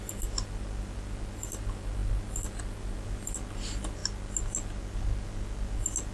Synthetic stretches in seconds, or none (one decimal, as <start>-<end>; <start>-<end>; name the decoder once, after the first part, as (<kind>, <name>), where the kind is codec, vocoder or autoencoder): none